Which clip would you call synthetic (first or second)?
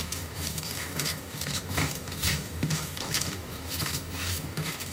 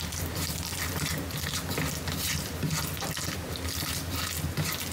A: first